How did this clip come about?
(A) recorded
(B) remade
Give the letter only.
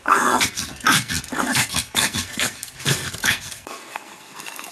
B